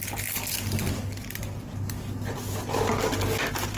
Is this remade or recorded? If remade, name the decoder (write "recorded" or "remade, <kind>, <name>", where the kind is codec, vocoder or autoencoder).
recorded